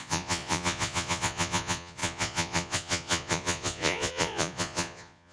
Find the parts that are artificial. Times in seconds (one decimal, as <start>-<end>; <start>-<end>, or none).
0.0-5.3